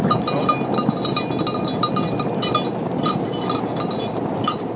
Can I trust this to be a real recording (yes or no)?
yes